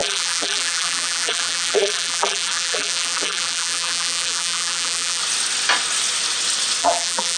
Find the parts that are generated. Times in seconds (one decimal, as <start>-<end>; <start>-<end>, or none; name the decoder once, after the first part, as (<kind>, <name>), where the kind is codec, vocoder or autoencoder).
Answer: 0.0-5.2 (vocoder, BigVGAN v2); 6.8-7.4